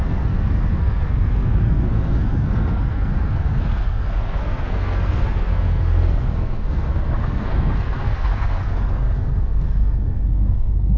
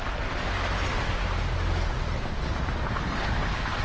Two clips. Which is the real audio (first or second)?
second